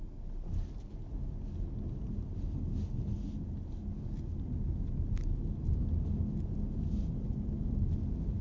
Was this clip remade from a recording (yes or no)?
no